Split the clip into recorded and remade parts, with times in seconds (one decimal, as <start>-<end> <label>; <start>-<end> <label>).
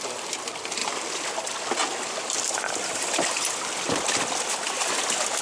0.0-0.8 recorded; 0.8-1.3 remade; 1.3-5.4 recorded